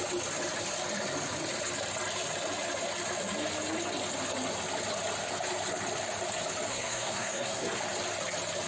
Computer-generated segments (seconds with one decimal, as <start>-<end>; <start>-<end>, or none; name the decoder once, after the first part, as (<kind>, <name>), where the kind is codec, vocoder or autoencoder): 6.7-7.8 (codec, SNAC)